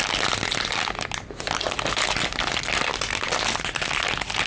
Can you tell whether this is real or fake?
real